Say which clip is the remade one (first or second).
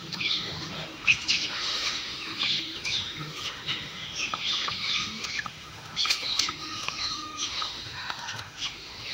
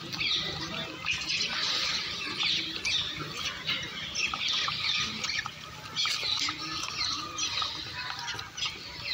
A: first